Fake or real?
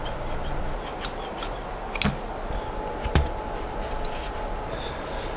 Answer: real